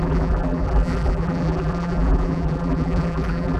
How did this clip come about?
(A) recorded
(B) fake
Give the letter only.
B